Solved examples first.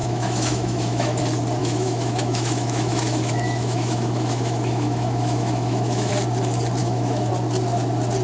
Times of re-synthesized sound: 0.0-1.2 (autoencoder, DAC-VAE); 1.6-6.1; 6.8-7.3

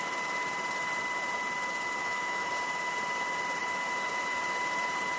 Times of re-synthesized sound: 2.0-2.5 (autoencoder, DAC-VAE)

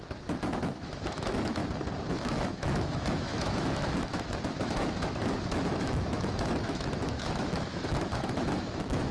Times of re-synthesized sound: 0.0-1.6 (autoencoder, DAC-VAE); 2.1-9.1

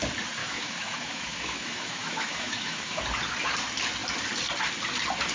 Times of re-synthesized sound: 0.4-3.0 (autoencoder, DAC-VAE)